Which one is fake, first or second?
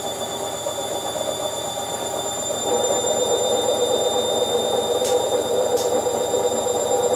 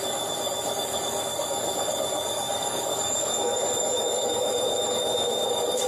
second